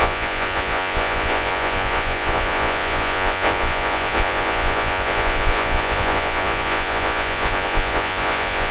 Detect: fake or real fake